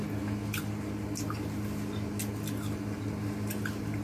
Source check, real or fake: real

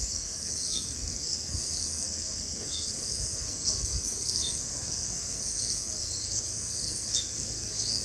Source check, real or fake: fake